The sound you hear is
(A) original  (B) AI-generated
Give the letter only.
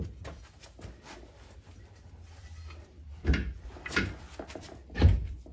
A